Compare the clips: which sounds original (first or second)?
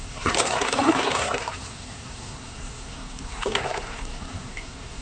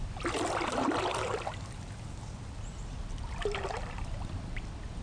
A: second